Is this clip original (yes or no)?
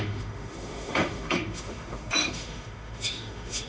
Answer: no